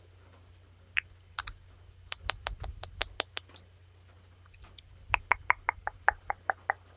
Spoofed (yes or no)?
no